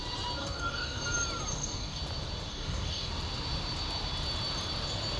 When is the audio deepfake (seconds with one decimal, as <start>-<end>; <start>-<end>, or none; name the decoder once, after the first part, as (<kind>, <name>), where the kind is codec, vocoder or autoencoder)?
0.4-1.0 (codec, DAC); 1.5-2.0; 2.5-3.1